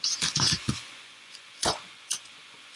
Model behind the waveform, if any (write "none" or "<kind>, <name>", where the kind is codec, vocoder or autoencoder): vocoder, Vocos